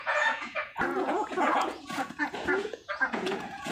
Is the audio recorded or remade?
remade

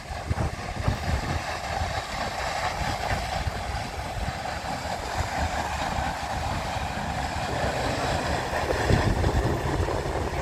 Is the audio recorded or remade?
recorded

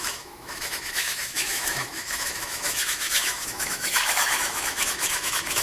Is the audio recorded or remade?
remade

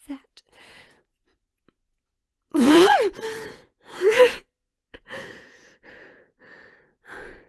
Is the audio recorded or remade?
remade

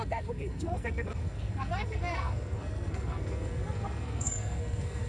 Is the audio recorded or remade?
remade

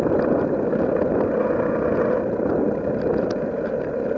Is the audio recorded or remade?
recorded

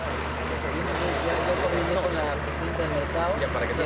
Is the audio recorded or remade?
recorded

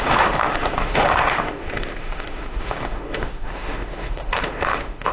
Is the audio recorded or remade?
remade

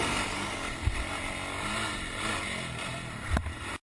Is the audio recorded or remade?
recorded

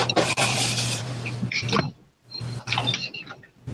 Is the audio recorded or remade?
remade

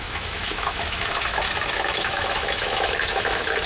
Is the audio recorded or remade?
remade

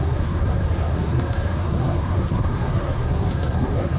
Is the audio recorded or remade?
remade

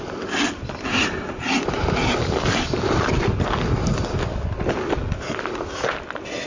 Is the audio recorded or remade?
recorded